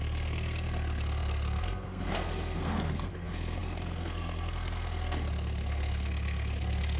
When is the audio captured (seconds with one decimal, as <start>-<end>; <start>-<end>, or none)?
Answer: none